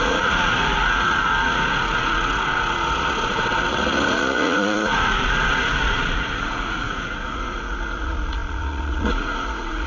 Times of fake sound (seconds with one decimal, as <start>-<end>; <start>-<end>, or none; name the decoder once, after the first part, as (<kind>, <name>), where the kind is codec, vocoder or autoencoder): 0.0-9.9 (vocoder, Vocos)